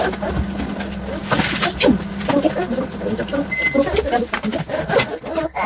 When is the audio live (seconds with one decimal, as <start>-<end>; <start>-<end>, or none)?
0.0-5.7